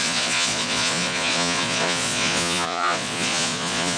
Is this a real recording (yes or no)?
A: no